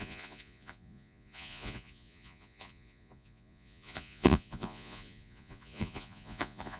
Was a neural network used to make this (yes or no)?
yes